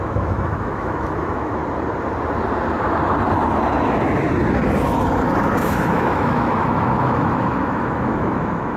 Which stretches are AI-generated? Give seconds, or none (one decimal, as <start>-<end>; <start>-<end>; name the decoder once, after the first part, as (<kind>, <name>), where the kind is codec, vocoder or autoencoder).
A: 0.0-1.6 (autoencoder, DAC-VAE); 5.6-8.8